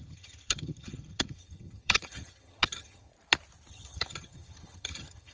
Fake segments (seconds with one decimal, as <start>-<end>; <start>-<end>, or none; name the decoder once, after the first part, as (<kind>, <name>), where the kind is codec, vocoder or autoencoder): 0.0-3.1 (vocoder, HiFi-GAN); 3.7-5.3